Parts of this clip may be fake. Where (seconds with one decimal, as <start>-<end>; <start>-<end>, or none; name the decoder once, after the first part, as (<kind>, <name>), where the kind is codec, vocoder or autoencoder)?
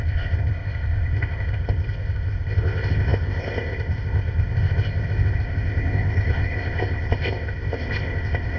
0.0-8.6 (codec, ZipCodec)